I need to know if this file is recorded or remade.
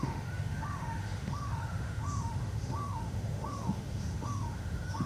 remade